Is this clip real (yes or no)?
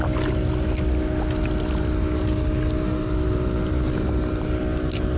yes